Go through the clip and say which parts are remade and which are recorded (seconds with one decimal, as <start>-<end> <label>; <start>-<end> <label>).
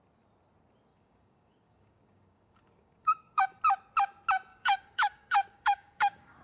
0.0-0.9 recorded; 0.9-3.6 remade; 3.6-4.5 recorded; 4.5-6.4 remade